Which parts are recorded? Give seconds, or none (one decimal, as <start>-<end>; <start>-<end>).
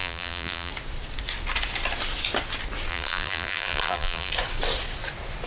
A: 0.7-2.9; 4.3-5.5